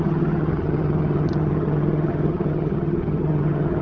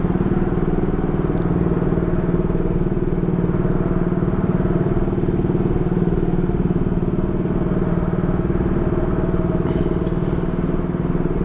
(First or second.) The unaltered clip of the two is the second